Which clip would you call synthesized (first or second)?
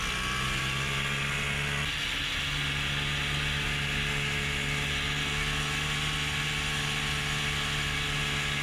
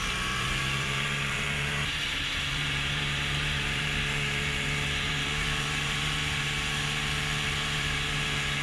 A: second